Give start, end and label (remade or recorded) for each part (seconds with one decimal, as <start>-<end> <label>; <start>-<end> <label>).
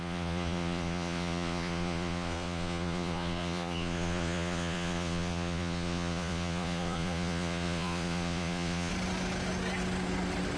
0.0-8.9 remade; 8.9-10.6 recorded